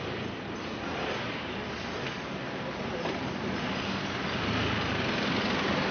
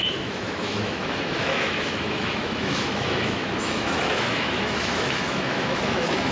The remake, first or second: second